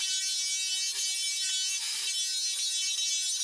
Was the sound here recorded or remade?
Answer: recorded